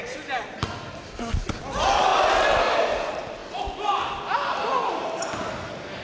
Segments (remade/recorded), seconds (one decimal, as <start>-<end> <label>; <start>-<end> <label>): 0.0-6.0 recorded